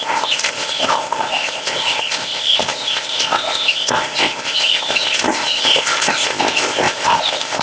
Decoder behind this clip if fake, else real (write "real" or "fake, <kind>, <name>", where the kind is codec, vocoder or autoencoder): fake, codec, ZipCodec